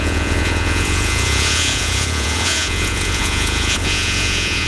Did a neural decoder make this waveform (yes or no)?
yes